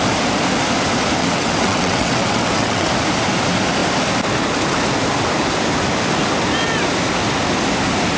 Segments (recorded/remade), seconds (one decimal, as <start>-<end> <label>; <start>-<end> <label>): 0.0-1.2 recorded; 1.2-2.9 remade; 2.9-8.2 recorded